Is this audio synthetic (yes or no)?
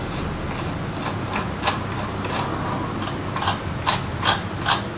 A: no